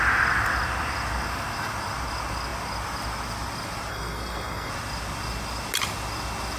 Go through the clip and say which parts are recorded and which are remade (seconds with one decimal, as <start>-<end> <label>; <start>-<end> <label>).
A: 0.0-3.9 recorded; 3.9-4.7 remade; 4.7-6.6 recorded